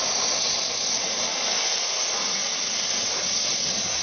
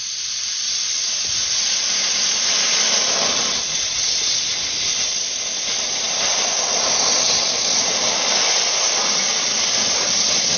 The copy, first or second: second